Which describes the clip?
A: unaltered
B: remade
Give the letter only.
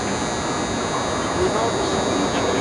A